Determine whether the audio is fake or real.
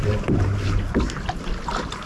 real